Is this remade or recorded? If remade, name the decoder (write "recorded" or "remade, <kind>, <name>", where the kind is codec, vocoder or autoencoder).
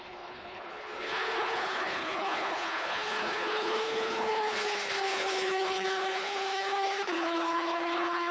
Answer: remade, codec, HILCodec